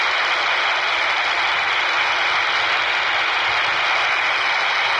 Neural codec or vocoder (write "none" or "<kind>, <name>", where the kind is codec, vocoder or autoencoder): none